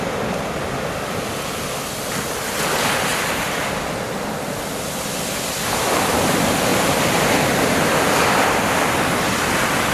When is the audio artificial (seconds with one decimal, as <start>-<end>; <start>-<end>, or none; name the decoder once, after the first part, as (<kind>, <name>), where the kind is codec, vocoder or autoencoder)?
none